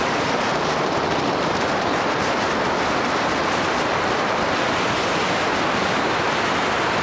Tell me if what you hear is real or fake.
real